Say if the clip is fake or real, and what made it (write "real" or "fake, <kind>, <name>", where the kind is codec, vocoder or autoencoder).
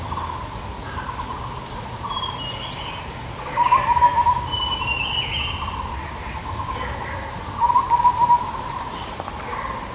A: real